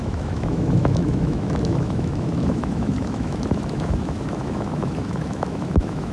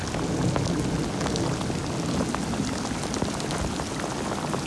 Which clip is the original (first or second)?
second